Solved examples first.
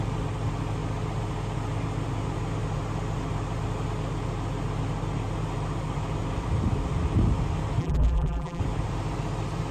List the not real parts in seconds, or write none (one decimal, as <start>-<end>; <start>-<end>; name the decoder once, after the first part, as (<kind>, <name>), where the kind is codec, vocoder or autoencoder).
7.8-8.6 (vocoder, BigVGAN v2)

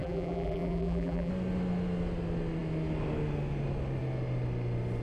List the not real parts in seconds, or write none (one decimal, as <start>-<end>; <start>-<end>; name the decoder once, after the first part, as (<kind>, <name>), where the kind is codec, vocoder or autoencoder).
0.0-1.3 (vocoder, BigVGAN v2)

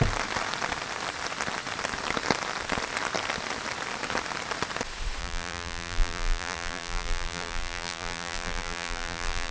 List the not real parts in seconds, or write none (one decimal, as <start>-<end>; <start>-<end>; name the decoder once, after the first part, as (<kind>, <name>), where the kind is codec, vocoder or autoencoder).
5.2-9.5 (vocoder, BigVGAN v2)

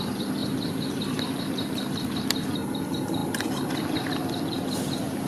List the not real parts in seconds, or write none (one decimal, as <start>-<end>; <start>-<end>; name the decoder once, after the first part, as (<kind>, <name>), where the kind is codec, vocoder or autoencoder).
none

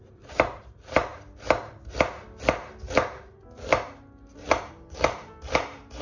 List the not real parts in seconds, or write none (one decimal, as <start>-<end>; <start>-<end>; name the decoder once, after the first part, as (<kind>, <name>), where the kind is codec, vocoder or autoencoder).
0.0-1.1 (vocoder, BigVGAN v2); 4.7-6.0